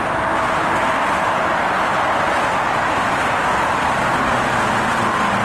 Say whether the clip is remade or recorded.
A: recorded